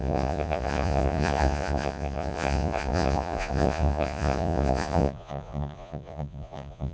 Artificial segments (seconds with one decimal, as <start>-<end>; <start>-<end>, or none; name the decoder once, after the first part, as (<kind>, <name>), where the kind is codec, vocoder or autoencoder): 0.0-6.9 (vocoder, Vocos)